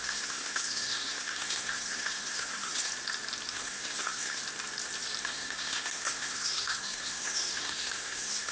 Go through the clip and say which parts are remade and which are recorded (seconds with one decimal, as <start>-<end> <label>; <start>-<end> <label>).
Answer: 0.0-2.9 remade; 2.9-3.5 recorded; 3.5-4.4 remade; 4.4-5.2 recorded; 5.2-8.5 remade